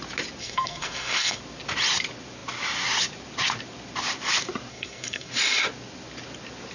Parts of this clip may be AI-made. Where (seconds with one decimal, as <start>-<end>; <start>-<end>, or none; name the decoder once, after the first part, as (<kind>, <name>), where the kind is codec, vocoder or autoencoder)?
0.4-1.4 (codec, SNAC); 4.7-5.3